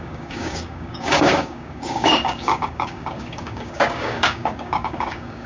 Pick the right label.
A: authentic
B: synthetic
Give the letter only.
B